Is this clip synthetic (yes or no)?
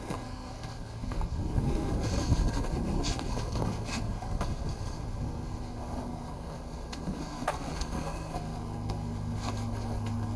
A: yes